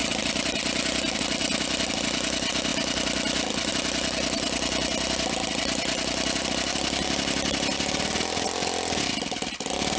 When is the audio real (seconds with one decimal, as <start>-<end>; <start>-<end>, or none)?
0.0-10.0

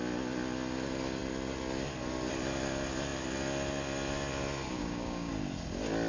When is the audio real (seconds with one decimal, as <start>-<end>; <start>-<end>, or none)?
0.0-4.8; 5.3-6.1